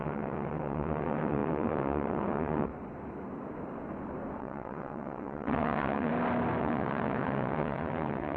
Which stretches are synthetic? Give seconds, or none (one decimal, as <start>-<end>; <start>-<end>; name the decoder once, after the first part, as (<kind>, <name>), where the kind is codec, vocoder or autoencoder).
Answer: 0.0-2.7 (vocoder, WaveNeXt); 4.4-6.1; 6.6-8.4